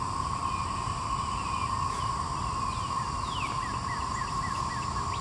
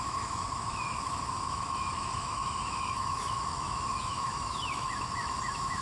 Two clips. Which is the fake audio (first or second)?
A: second